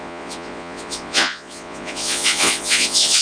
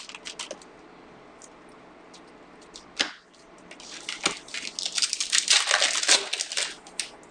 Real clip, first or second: second